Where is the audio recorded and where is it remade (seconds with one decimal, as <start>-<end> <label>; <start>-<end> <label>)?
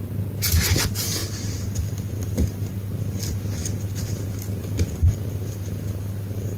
0.0-6.6 recorded